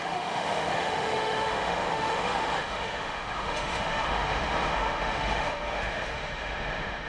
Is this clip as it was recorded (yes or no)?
no